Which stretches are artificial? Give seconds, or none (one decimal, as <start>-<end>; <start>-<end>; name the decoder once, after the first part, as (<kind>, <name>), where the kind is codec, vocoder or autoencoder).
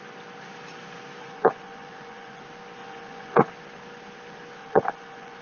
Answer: 1.2-2.4 (vocoder, Vocos); 2.8-3.5; 4.6-5.4